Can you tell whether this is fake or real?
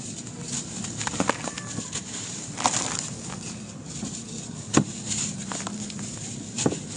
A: real